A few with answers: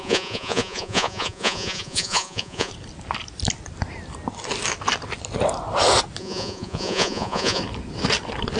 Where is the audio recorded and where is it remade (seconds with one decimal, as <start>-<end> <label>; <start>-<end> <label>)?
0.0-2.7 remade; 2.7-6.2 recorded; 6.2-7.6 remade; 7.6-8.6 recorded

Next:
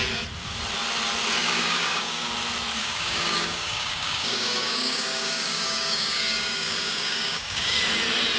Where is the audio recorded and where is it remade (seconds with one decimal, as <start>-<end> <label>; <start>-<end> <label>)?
0.0-1.4 recorded; 1.4-2.3 remade; 2.3-2.8 recorded; 2.8-7.8 remade; 7.8-8.4 recorded

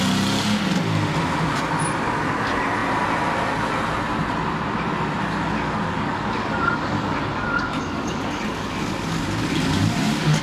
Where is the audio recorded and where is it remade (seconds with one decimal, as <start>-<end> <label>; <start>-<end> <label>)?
0.0-5.2 recorded; 5.2-10.4 remade

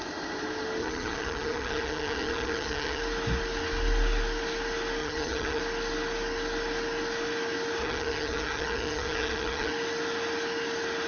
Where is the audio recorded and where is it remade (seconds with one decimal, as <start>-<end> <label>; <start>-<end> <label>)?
0.0-0.8 recorded; 0.8-3.0 remade; 3.0-5.0 recorded; 5.0-5.6 remade; 5.6-7.8 recorded; 7.8-9.7 remade; 9.7-11.1 recorded

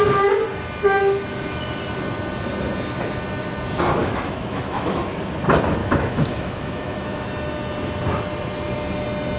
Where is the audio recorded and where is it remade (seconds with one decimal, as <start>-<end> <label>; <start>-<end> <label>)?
0.0-4.0 recorded; 4.0-4.9 remade; 4.9-5.8 recorded; 5.8-7.3 remade; 7.3-9.4 recorded

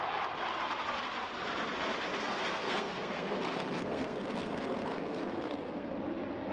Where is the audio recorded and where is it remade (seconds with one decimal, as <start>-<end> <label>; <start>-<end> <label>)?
0.0-2.1 recorded; 2.1-5.9 remade; 5.9-6.5 recorded

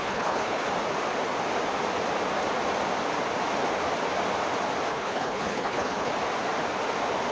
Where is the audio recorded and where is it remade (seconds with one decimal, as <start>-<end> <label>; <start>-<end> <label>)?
0.0-0.6 remade; 0.6-4.9 recorded; 4.9-6.1 remade; 6.1-7.3 recorded